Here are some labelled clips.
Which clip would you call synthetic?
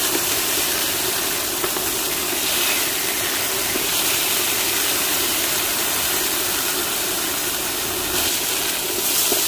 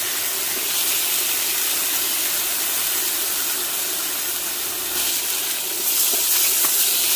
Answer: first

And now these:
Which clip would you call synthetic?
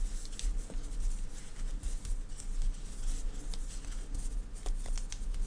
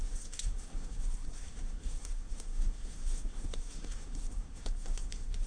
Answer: second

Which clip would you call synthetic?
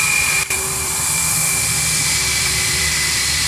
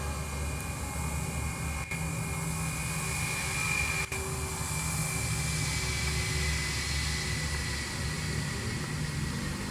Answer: first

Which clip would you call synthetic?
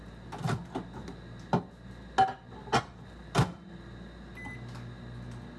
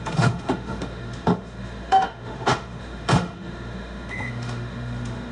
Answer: second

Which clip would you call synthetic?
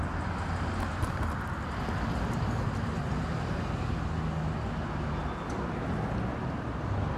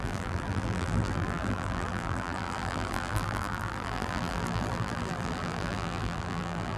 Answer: second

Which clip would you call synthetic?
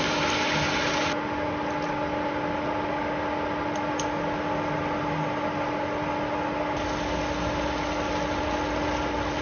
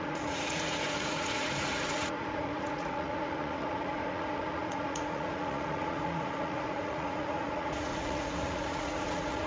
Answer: second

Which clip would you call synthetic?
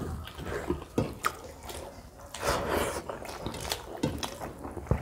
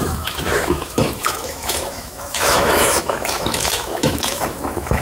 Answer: second